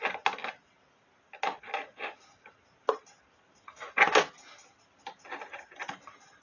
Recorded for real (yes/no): yes